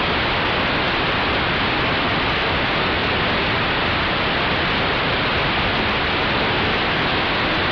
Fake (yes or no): no